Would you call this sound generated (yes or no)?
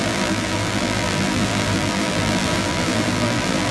yes